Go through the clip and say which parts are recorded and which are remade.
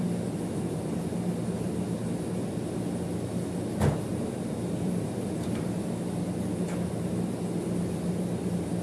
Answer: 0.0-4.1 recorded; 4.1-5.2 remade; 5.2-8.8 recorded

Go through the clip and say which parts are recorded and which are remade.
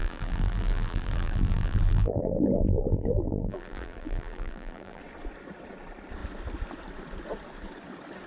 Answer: 0.0-5.0 remade; 5.0-8.3 recorded